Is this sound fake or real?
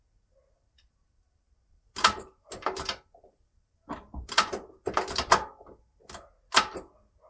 real